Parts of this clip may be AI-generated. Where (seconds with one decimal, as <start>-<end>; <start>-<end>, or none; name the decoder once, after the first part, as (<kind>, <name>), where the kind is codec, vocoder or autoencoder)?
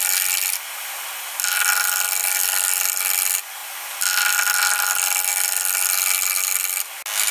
none